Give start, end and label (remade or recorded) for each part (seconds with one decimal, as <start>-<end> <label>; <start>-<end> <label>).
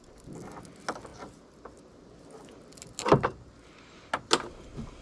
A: 0.0-5.0 recorded